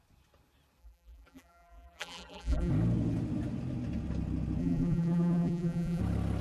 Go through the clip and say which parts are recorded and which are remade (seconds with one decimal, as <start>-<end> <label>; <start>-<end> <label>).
0.0-0.8 recorded; 0.8-2.7 remade; 2.7-4.6 recorded; 4.6-6.0 remade; 6.0-6.4 recorded